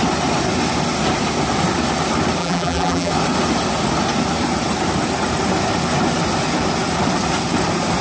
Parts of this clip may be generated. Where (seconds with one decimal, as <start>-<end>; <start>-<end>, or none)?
2.4-3.1

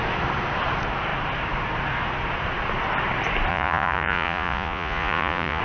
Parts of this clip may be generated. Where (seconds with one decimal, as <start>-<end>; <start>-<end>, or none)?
3.5-5.6

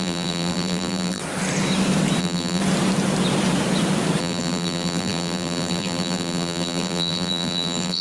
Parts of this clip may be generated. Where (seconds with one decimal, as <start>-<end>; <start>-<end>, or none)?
0.0-1.2; 2.2-2.6; 4.2-8.0

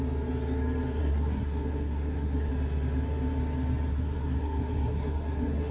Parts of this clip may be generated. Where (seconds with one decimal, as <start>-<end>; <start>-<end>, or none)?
1.0-2.5; 3.9-5.7

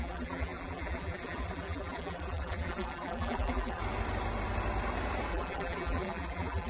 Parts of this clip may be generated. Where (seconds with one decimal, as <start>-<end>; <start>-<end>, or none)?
0.0-3.8; 5.3-6.7